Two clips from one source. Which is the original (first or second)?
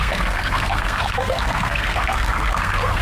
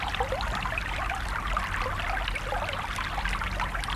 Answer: second